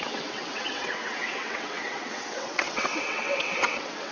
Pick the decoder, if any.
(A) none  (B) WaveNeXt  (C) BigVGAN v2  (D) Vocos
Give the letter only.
B